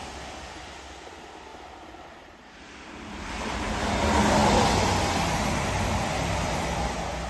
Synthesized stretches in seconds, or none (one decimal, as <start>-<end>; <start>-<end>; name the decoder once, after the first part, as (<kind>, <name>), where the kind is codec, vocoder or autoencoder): 1.5-3.6 (vocoder, BigVGAN v2)